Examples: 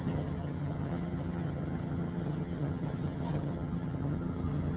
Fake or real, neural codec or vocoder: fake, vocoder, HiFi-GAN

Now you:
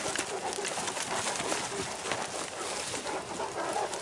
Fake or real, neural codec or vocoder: real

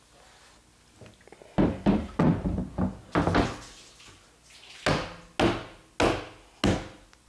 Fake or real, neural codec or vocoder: real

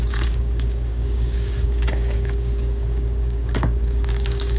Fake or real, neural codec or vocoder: fake, codec, DAC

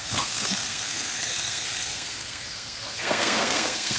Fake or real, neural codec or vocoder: fake, codec, SNAC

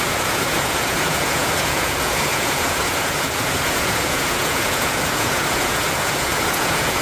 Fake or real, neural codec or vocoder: fake, vocoder, Vocos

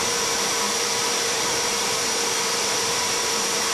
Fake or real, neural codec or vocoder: fake, vocoder, BigVGAN v2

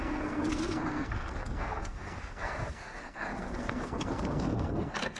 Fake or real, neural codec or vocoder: fake, codec, SNAC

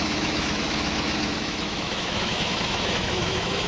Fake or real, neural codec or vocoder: fake, autoencoder, DAC-VAE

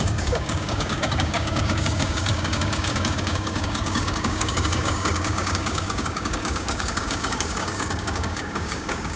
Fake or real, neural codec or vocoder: fake, codec, DAC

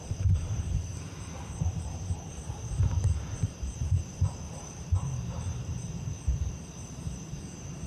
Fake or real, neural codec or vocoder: fake, vocoder, BigVGAN v2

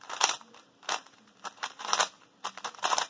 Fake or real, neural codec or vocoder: fake, vocoder, BigVGAN v2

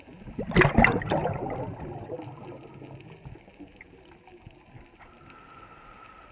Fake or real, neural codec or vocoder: real